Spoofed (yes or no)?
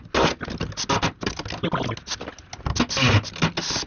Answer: no